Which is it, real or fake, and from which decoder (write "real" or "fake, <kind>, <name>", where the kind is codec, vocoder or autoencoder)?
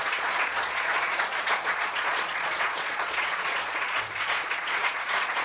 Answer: fake, vocoder, Vocos